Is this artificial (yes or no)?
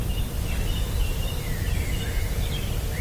yes